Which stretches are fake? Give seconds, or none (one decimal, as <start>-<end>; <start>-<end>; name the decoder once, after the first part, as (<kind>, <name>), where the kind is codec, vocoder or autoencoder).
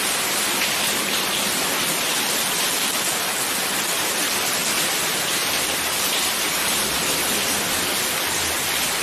none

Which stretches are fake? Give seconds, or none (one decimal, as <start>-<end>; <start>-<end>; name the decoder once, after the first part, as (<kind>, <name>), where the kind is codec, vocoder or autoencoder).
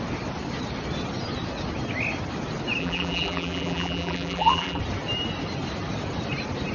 2.8-4.8 (vocoder, BigVGAN v2)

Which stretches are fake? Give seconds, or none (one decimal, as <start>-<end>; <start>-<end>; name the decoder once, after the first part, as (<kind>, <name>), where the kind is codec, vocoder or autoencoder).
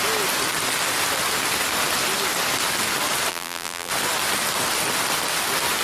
3.3-3.9 (vocoder, BigVGAN v2)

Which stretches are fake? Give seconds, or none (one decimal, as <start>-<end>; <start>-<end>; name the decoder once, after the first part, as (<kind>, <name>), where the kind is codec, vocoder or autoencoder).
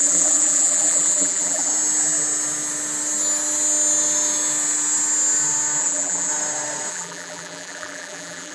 0.0-1.7 (vocoder, BigVGAN v2); 5.8-6.3; 6.9-8.5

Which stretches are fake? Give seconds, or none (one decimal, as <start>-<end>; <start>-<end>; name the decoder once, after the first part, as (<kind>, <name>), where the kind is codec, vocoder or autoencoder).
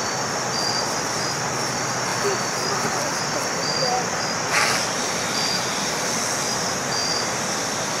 2.1-5.5 (vocoder, BigVGAN v2); 7.0-8.0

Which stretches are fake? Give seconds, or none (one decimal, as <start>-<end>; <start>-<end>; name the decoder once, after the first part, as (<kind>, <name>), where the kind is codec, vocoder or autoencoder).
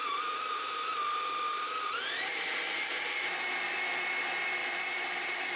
0.0-0.7 (vocoder, BigVGAN v2); 2.3-3.5; 4.6-5.6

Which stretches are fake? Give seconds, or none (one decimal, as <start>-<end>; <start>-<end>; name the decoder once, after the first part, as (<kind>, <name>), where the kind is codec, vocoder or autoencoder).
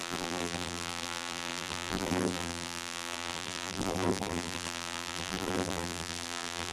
0.0-6.7 (vocoder, BigVGAN v2)